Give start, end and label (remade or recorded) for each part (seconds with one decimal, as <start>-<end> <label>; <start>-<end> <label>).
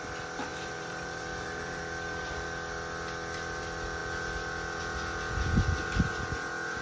0.0-0.5 recorded; 0.5-1.8 remade; 1.8-6.8 recorded